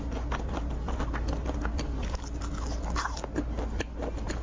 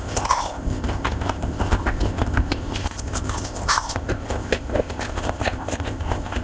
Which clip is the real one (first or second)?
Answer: first